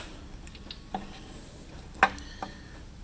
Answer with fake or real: real